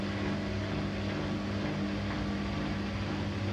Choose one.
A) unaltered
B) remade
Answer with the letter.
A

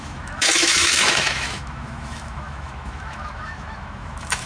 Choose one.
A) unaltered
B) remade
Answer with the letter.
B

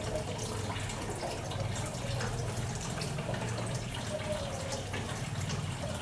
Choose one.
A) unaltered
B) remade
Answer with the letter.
A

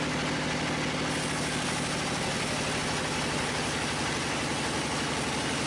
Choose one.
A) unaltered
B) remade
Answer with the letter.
A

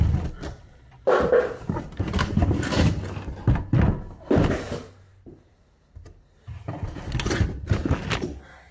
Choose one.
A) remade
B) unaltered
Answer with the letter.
B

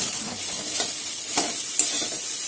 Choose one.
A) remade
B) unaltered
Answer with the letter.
B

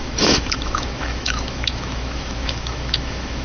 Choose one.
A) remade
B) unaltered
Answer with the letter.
A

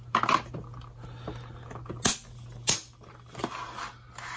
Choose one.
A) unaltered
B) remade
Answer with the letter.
A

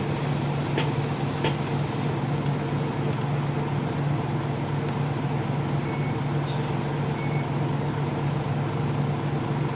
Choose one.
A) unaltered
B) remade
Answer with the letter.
A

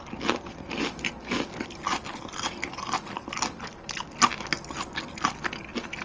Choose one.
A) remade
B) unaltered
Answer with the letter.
B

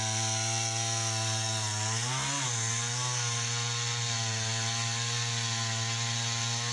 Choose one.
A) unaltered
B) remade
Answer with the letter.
A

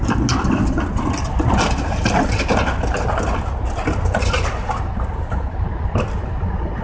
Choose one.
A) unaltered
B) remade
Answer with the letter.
A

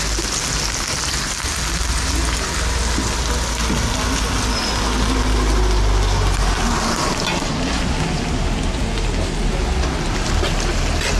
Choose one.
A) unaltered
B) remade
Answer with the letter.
A